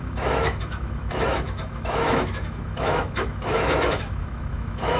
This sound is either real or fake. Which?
fake